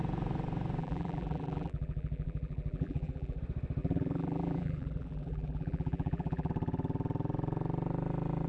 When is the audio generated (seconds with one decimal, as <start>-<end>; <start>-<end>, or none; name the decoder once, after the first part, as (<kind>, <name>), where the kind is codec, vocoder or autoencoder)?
0.8-3.4 (vocoder, BigVGAN v2); 3.8-6.5

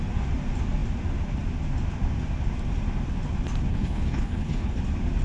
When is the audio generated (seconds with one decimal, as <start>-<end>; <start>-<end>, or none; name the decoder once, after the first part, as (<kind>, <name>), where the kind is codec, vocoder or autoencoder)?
3.7-4.8 (codec, HILCodec)

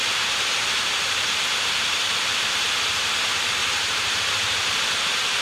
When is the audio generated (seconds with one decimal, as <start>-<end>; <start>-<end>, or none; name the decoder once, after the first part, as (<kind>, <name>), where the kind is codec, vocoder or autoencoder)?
0.0-0.9 (vocoder, BigVGAN v2); 3.6-4.2

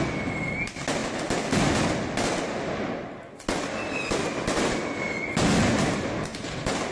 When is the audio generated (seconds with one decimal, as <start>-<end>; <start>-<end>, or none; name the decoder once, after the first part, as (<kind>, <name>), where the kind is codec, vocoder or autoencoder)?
none